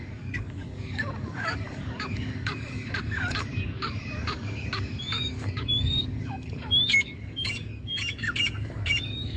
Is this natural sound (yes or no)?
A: no